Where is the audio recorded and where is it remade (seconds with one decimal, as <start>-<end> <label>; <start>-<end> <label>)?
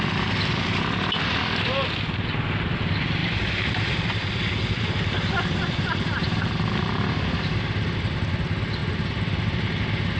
0.0-3.2 recorded; 3.2-7.6 remade; 7.6-10.2 recorded